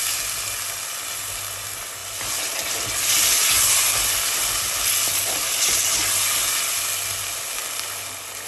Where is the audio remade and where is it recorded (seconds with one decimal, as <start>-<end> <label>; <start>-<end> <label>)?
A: 0.0-8.5 recorded